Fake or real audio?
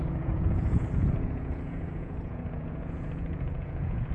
fake